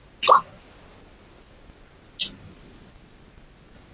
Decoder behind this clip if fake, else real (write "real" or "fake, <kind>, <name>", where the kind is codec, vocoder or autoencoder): real